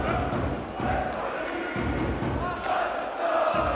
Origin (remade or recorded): recorded